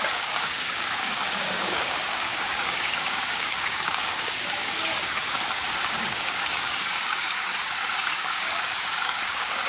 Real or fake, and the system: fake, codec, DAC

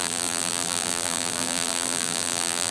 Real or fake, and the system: fake, vocoder, BigVGAN v2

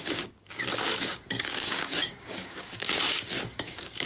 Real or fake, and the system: fake, codec, DAC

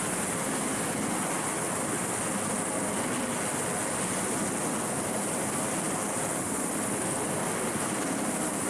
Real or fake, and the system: real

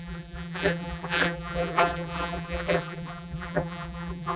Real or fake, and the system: fake, vocoder, BigVGAN v2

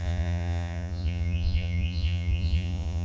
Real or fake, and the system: fake, vocoder, Vocos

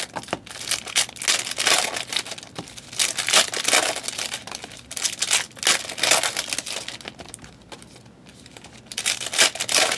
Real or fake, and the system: real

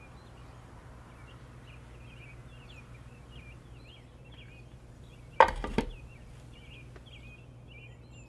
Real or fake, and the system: real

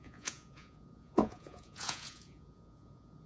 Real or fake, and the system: fake, vocoder, Vocos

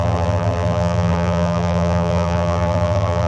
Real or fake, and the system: fake, vocoder, BigVGAN v2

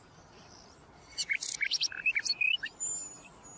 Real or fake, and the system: real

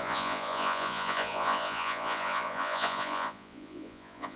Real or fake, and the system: fake, vocoder, Vocos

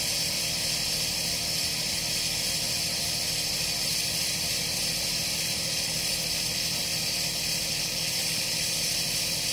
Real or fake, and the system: fake, vocoder, BigVGAN v2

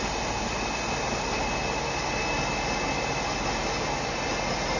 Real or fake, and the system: real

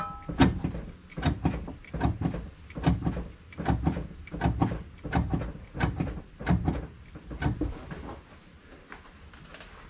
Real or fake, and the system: real